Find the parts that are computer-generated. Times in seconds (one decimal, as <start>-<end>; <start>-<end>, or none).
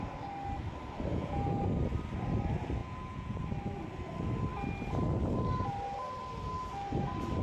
1.1-1.6; 2.8-3.4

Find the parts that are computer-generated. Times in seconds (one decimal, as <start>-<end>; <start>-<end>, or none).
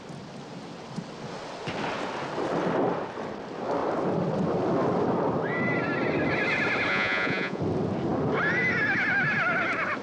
6.9-7.6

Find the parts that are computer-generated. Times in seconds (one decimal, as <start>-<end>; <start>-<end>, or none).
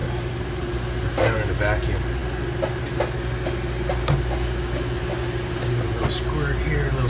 none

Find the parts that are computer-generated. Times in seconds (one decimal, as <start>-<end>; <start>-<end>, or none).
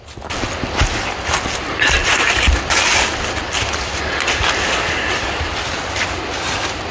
none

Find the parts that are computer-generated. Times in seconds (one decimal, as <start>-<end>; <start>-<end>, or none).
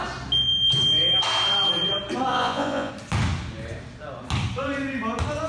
2.3-2.9